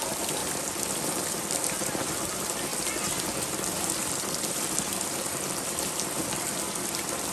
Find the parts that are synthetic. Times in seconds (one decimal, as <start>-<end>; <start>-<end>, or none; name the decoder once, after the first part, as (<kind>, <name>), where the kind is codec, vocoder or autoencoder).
0.4-2.2 (vocoder, BigVGAN v2); 2.7-6.6